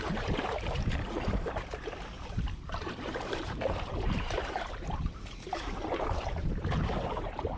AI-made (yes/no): yes